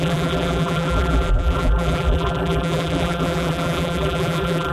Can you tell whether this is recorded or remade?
remade